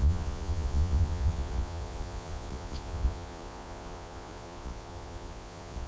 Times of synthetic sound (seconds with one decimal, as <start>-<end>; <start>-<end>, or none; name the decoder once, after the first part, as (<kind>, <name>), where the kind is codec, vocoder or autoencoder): 0.0-5.9 (vocoder, Vocos)